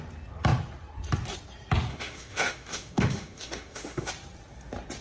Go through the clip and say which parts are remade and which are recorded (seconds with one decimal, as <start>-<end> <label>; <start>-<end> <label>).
0.0-1.9 recorded; 1.9-4.1 remade; 4.1-5.0 recorded